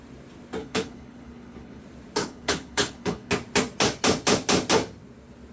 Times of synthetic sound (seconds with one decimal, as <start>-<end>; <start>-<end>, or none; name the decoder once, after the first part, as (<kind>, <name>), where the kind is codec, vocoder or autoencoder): 0.6-1.8 (codec, HILCodec); 2.2-3.3